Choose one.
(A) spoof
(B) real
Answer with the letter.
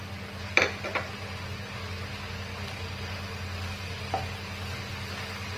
B